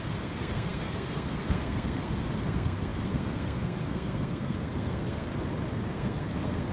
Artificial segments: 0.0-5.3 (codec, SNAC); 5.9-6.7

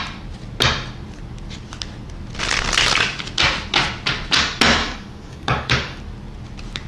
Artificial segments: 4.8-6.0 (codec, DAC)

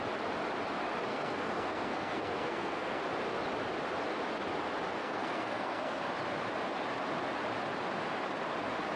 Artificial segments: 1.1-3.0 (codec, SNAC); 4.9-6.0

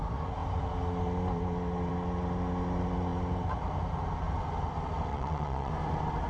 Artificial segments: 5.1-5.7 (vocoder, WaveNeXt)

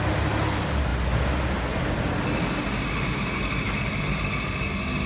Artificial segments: none

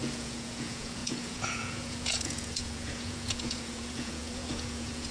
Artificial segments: 0.0-5.1 (vocoder, Vocos)